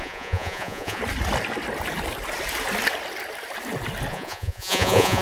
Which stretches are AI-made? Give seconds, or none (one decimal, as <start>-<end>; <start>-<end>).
0.0-1.0; 4.1-5.2